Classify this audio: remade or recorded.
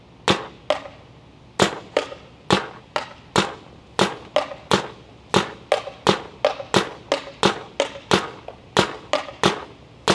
recorded